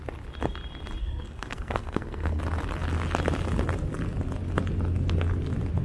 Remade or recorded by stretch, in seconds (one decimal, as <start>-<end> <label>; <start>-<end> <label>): 0.0-1.0 recorded; 1.0-2.4 remade; 2.4-5.8 recorded

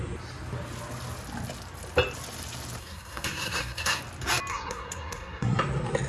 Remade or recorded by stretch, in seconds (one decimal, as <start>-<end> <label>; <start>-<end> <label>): 0.0-2.8 recorded; 2.8-4.0 remade; 4.0-4.5 recorded; 4.5-5.6 remade; 5.6-6.1 recorded

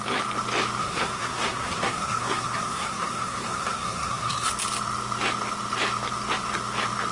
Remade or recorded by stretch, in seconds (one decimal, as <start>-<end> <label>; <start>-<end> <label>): 0.0-0.8 recorded; 0.8-4.5 remade; 4.5-7.1 recorded

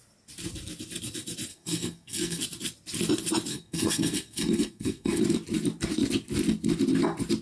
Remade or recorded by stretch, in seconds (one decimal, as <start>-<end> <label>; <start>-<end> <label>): 0.0-1.5 recorded; 1.5-2.4 remade; 2.4-3.5 recorded; 3.5-5.2 remade; 5.2-7.4 recorded

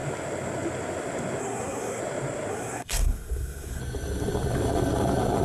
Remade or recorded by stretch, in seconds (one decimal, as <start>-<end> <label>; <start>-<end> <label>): 0.0-1.4 recorded; 1.4-2.0 remade; 2.0-2.5 recorded; 2.5-3.8 remade; 3.8-5.4 recorded

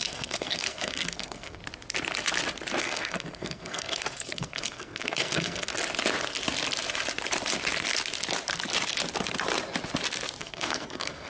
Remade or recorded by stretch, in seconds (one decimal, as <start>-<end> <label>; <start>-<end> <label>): 0.0-1.6 remade; 1.6-2.8 recorded; 2.8-5.7 remade; 5.7-10.4 recorded; 10.4-11.3 remade